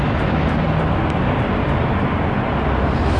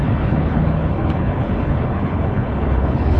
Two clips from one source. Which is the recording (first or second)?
first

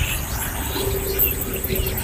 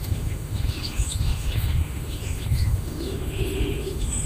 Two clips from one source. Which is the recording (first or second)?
first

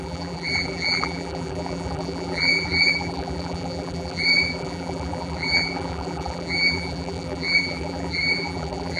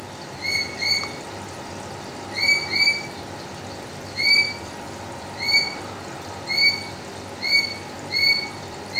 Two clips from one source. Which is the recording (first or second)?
second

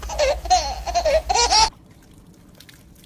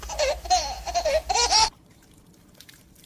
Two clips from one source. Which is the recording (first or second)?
first